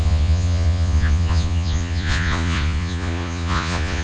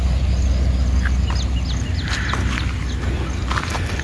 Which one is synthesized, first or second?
first